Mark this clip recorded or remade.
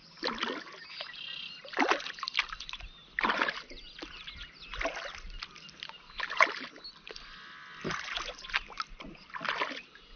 recorded